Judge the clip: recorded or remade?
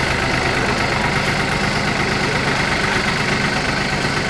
recorded